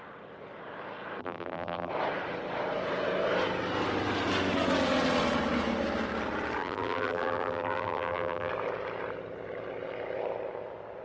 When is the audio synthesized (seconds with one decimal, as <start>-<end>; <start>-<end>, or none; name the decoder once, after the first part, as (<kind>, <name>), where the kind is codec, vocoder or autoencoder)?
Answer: 1.2-1.9 (vocoder, BigVGAN v2); 6.6-8.5